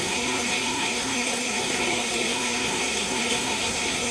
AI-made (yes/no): yes